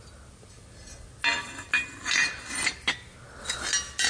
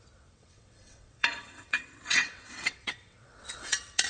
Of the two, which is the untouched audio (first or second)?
first